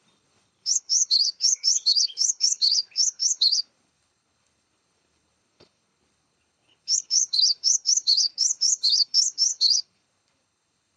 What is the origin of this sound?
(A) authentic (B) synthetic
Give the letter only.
B